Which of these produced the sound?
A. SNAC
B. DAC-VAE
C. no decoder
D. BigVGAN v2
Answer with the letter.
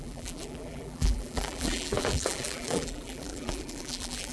D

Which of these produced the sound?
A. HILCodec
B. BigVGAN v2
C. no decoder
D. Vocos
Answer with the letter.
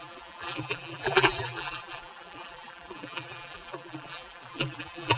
B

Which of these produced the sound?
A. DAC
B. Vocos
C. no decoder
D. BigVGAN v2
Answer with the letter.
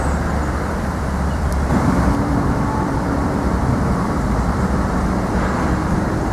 D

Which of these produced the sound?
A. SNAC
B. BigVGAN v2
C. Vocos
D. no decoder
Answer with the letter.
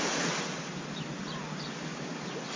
D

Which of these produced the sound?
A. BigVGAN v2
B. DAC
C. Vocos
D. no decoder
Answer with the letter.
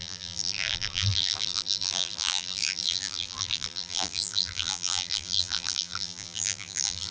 A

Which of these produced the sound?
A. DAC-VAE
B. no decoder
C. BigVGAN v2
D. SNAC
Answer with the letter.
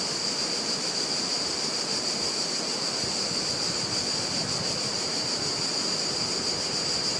B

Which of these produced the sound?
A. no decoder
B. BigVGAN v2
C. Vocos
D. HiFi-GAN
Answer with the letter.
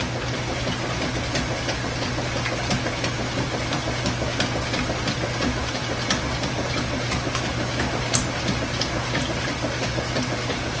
A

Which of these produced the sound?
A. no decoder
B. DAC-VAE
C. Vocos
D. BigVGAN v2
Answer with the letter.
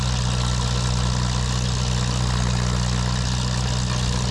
A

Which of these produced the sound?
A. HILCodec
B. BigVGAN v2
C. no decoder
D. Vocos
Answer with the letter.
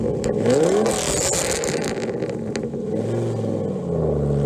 C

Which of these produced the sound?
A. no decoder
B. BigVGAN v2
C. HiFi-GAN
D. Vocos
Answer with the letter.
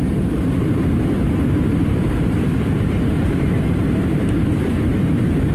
B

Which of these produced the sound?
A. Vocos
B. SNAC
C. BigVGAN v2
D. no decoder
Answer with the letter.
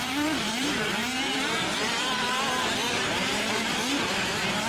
C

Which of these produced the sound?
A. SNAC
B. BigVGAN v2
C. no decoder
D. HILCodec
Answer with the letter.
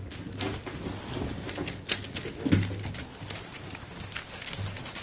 C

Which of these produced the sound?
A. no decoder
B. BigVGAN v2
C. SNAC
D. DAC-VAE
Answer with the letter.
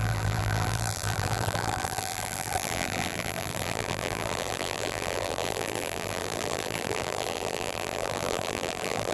B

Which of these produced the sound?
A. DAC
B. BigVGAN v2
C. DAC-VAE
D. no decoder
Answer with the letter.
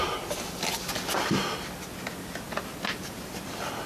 D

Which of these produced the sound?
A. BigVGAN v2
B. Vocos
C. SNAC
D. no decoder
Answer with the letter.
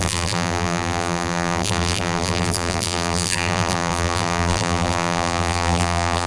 A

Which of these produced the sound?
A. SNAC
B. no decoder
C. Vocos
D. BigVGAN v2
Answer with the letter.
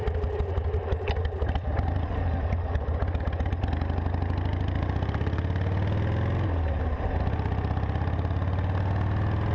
B